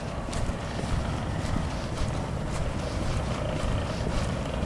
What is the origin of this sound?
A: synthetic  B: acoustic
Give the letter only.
B